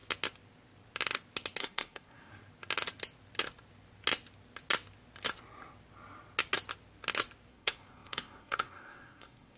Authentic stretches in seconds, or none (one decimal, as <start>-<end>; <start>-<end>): 0.0-1.6; 2.3-7.5